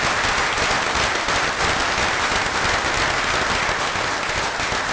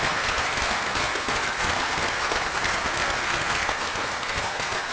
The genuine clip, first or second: first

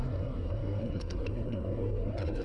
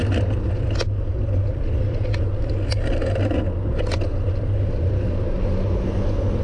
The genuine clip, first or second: second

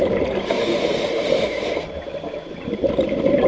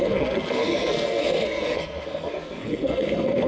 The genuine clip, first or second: first